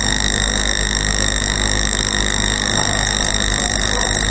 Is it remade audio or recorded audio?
remade